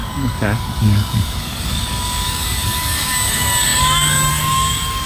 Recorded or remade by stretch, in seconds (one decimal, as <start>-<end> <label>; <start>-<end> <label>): 0.0-5.1 remade